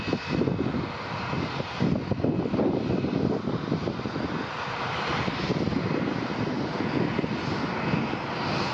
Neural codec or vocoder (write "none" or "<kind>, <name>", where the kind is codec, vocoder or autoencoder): none